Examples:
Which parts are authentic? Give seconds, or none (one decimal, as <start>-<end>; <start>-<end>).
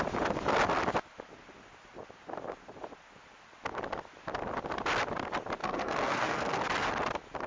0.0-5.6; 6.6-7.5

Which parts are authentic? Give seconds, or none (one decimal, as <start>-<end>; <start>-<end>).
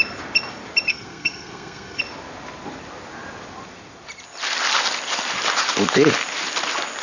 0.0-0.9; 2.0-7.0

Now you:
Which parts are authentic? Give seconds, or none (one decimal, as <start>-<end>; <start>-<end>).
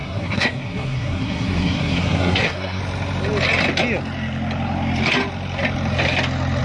2.8-6.6